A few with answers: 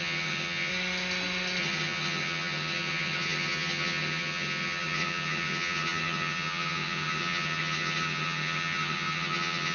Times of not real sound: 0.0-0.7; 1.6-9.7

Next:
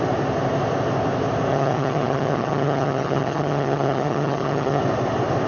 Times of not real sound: 1.5-4.8